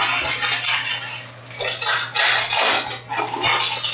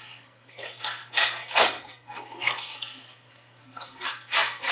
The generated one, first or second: second